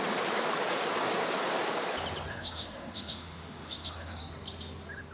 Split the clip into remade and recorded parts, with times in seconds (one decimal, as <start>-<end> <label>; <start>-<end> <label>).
0.0-2.3 recorded; 2.3-4.2 remade; 4.2-5.1 recorded